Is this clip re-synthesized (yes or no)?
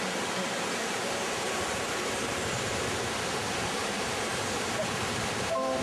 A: yes